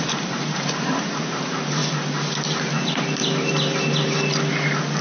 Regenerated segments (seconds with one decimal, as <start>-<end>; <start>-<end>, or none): 0.0-1.8